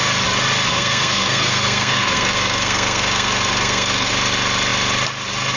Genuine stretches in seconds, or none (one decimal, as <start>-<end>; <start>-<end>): 0.0-0.7; 4.1-5.6